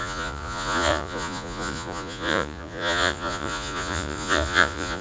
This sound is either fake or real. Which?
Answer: fake